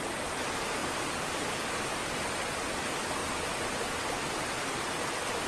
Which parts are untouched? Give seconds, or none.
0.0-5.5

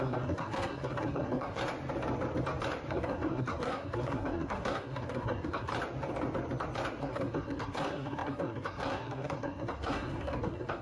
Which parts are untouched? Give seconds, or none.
1.6-2.9; 5.7-7.0

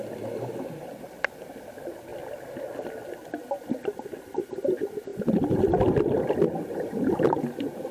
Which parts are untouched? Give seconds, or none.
0.0-7.9